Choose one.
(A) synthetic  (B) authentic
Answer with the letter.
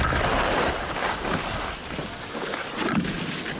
B